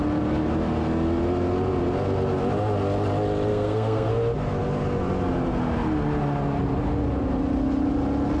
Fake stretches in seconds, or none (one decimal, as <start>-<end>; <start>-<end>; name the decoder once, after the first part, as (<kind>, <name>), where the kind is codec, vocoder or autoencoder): 3.5-4.1 (codec, SNAC)